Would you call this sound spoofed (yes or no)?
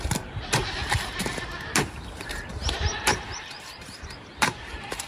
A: yes